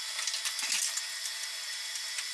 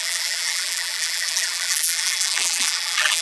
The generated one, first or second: second